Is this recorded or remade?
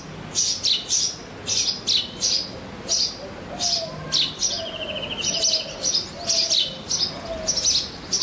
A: recorded